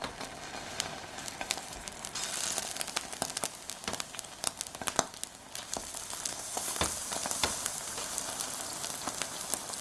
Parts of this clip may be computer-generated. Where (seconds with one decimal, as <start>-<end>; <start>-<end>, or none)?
6.3-6.8